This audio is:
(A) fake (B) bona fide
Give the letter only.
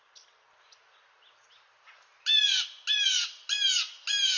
B